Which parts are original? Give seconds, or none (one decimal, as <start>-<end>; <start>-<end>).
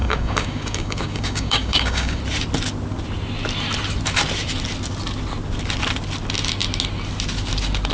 2.2-7.9